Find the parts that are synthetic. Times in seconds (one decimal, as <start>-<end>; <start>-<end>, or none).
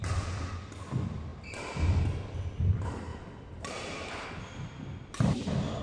0.0-1.3; 2.7-3.1; 5.2-5.8